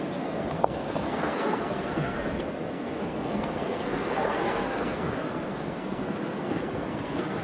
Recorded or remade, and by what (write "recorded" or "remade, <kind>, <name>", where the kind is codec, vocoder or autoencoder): remade, codec, SNAC